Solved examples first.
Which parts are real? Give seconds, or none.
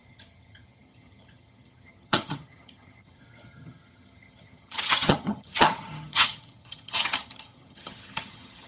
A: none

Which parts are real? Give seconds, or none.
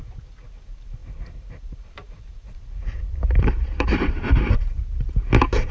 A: 0.0-1.0; 4.4-5.7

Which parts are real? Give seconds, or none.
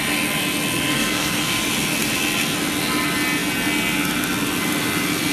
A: 0.0-0.9; 1.6-5.3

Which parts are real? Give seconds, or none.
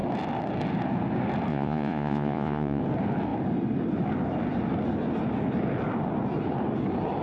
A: 0.0-1.5; 2.8-7.2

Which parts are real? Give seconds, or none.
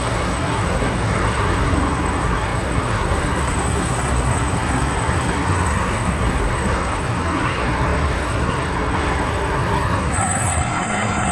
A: none